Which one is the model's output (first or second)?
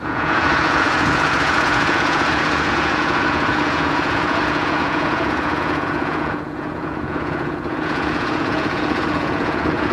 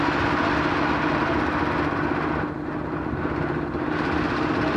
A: first